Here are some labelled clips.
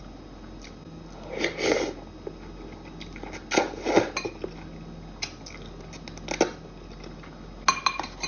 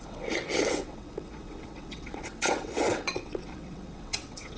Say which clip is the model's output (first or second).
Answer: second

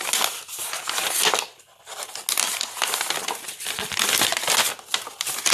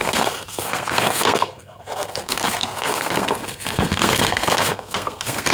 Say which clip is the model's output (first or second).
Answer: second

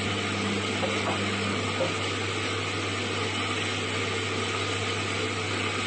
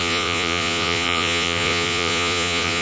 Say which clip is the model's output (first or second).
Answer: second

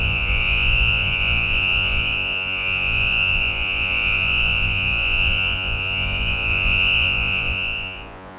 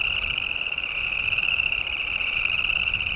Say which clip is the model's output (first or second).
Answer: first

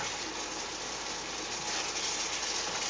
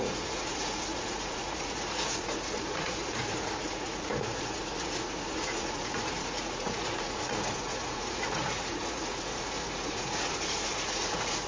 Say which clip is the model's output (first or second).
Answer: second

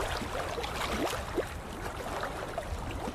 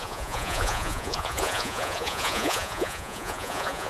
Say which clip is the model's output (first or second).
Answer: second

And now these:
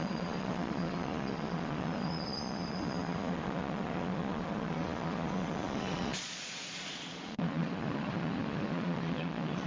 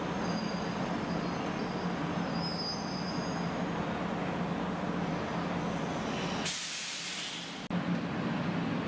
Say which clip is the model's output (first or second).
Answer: first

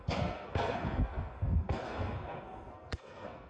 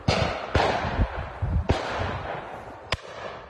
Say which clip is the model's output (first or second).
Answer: first